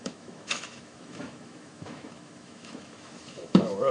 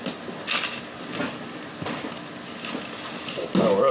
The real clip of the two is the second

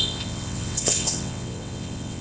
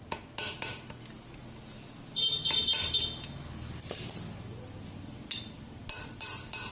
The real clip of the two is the second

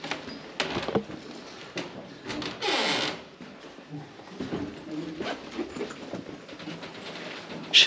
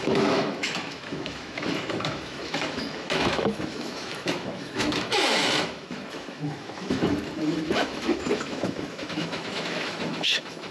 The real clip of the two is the first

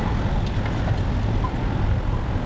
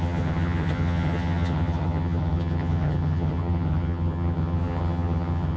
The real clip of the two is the first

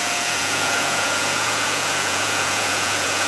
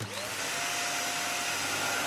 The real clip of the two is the second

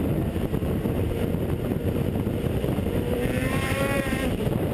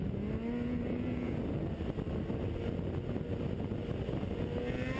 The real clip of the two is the second